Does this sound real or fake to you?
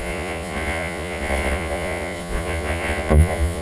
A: fake